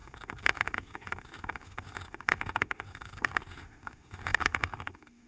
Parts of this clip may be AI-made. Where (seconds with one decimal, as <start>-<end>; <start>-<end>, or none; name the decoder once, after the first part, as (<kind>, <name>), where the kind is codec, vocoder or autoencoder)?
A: 0.0-5.3 (autoencoder, DAC-VAE)